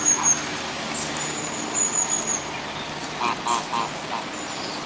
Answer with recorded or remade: recorded